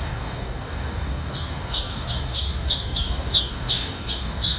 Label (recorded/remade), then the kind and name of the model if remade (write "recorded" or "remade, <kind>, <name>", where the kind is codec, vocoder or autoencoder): remade, codec, DAC